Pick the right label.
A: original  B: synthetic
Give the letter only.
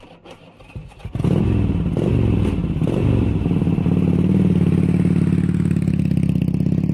A